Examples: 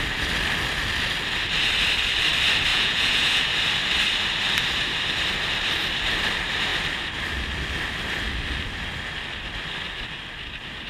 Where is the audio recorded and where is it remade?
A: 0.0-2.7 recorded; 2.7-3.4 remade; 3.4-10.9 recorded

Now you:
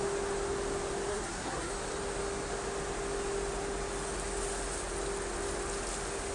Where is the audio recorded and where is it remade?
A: 0.0-1.1 recorded; 1.1-1.7 remade; 1.7-6.3 recorded

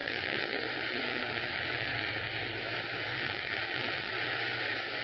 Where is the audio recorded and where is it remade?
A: 0.0-2.3 remade; 2.3-3.1 recorded; 3.1-4.1 remade; 4.1-5.0 recorded

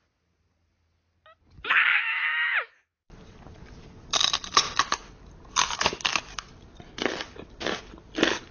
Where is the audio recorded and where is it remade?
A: 0.0-1.9 recorded; 1.9-3.0 remade; 3.0-8.5 recorded

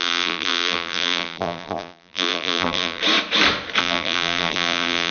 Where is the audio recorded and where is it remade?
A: 0.0-3.0 remade; 3.0-3.8 recorded; 3.8-5.1 remade

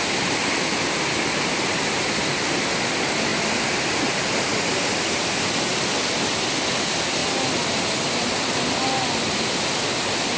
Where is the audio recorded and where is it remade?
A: 0.0-10.4 recorded